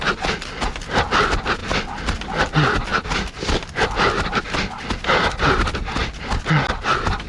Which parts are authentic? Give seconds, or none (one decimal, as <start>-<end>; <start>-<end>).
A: 0.0-7.3